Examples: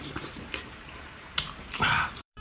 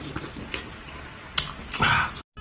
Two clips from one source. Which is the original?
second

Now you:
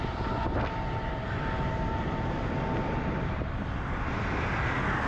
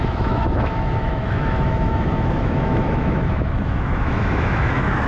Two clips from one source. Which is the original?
first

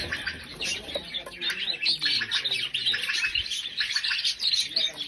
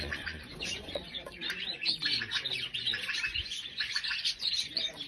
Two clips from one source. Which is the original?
first